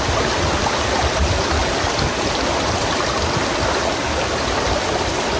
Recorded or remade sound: recorded